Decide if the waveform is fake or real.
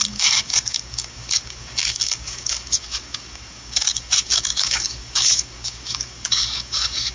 fake